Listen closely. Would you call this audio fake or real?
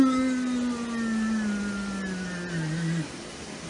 real